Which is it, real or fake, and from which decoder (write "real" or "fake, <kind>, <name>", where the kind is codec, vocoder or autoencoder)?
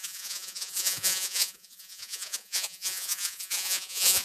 fake, vocoder, Vocos